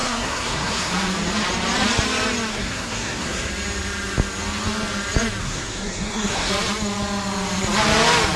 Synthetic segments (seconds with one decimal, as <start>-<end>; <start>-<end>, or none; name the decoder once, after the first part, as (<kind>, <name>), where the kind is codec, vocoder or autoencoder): 0.0-0.9 (codec, SNAC); 2.5-3.5; 5.4-6.5